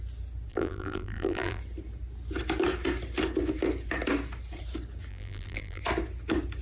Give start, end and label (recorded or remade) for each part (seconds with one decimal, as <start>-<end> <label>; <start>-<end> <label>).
0.0-0.5 recorded; 0.5-1.6 remade; 1.6-5.1 recorded; 5.1-5.8 remade; 5.8-6.6 recorded